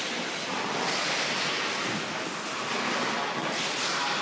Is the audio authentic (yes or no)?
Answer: yes